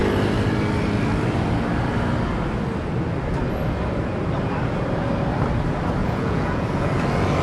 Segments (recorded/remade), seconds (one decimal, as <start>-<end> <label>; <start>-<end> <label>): 0.0-6.0 recorded; 6.0-6.9 remade; 6.9-7.4 recorded